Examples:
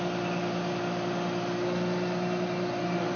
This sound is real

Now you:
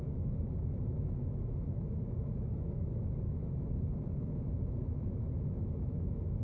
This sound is fake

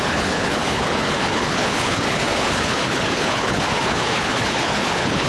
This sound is fake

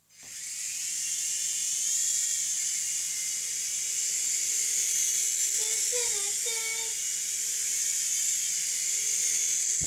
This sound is real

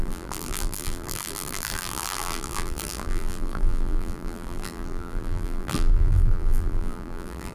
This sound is fake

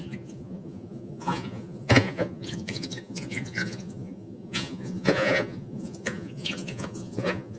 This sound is fake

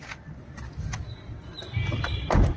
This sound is real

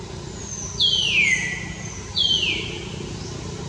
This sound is real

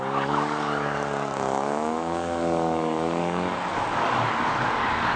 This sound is fake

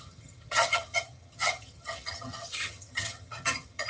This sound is fake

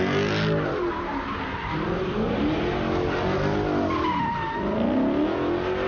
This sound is real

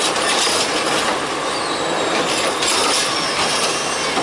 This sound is real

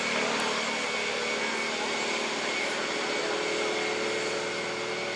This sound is real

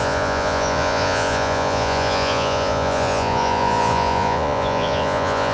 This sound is fake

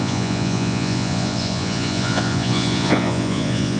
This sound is fake